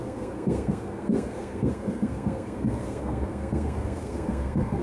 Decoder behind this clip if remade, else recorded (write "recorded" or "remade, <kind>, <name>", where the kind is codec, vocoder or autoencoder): remade, codec, SNAC